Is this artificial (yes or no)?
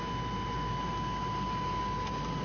no